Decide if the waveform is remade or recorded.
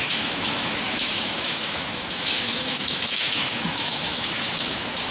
remade